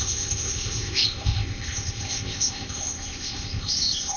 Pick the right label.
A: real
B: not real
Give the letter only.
B